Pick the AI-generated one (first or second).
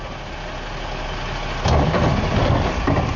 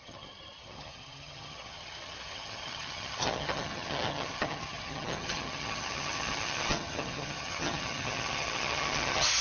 second